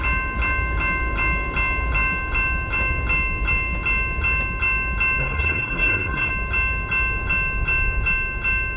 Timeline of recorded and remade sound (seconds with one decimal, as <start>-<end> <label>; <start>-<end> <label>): 0.0-5.2 recorded; 5.2-6.3 remade; 6.3-8.8 recorded